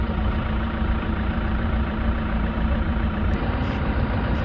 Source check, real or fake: fake